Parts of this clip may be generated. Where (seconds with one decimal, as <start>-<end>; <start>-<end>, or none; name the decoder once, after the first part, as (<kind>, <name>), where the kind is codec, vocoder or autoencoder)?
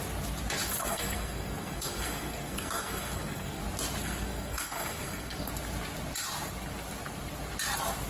0.8-3.6 (codec, SNAC); 4.0-5.5